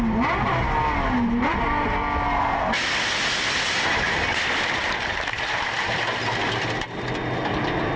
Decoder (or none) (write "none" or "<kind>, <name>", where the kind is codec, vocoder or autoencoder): none